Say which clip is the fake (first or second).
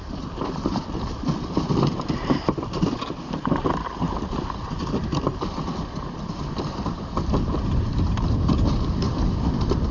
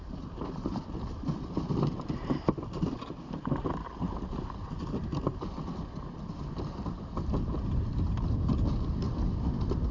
first